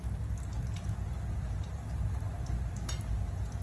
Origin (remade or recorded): recorded